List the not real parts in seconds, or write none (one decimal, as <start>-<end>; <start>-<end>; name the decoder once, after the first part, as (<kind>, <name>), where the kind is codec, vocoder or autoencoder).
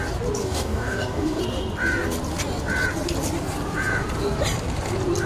0.4-1.4 (codec, DAC)